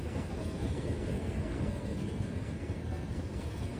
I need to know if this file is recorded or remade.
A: remade